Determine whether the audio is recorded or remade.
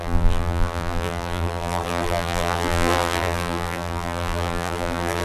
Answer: remade